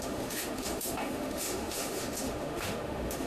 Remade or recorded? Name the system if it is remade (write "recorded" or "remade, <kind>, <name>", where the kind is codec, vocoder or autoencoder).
remade, autoencoder, DAC-VAE